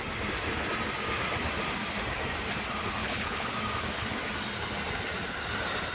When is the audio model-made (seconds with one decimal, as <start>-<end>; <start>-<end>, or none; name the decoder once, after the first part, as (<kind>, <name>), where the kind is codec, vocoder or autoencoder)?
3.0-3.5 (codec, HILCodec)